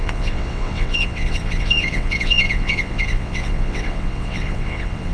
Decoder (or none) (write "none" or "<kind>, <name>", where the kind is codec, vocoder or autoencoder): vocoder, WaveNeXt